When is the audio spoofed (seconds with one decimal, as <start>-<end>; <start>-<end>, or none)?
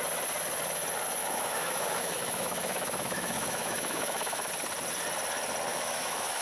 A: 1.2-4.5; 5.7-6.4